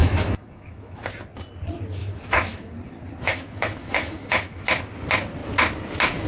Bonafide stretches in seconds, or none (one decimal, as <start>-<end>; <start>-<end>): 1.1-2.0; 2.7-3.3; 4.6-6.3